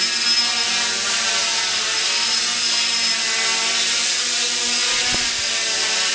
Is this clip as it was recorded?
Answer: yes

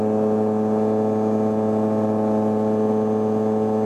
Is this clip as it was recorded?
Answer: yes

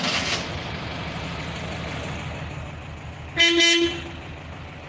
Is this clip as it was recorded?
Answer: yes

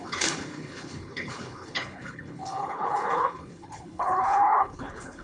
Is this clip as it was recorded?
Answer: no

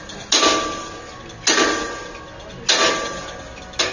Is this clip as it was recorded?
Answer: yes